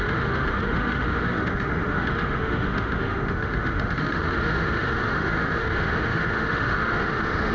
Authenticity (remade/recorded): remade